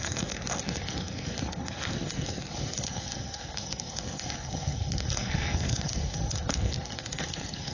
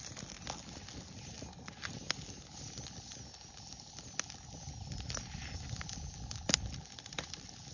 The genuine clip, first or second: second